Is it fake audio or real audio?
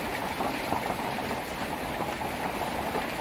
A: real